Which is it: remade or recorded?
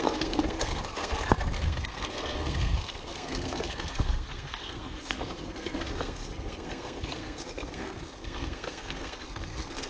remade